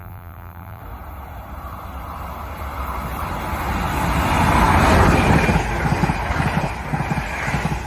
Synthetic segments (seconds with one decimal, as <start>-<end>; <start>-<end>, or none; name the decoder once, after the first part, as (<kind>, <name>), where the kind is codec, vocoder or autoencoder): 0.0-0.8 (vocoder, BigVGAN v2)